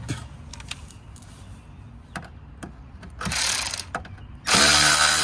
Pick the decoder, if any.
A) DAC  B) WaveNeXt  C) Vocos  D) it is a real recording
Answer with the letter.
D